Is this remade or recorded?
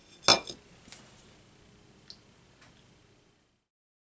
recorded